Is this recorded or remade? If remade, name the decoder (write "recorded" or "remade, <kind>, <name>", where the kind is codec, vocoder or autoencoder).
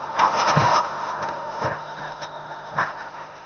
remade, autoencoder, DAC-VAE